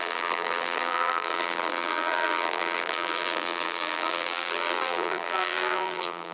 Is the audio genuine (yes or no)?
no